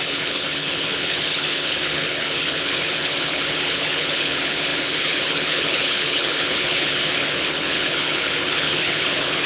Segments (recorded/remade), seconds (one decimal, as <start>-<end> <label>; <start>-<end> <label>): 0.0-9.5 remade